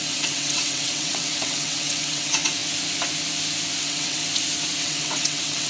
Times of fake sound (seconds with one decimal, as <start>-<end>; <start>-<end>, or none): 0.0-2.6; 3.8-4.2; 4.8-5.7